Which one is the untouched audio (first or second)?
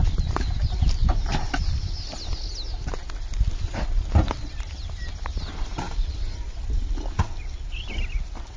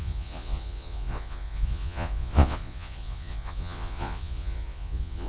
first